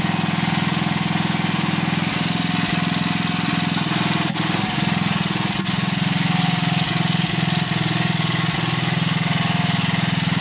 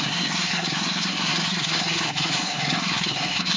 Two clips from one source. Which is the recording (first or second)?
first